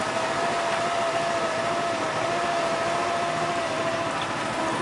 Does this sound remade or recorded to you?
recorded